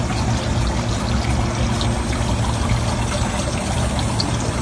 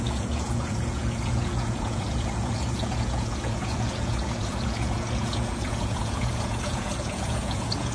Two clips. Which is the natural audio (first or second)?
first